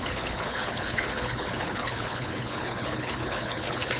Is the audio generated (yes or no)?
yes